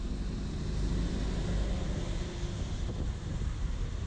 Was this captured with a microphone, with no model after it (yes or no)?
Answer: yes